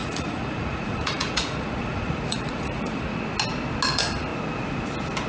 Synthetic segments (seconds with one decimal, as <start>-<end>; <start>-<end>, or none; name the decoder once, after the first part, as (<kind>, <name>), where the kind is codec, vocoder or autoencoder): 0.0-3.2 (vocoder, Vocos)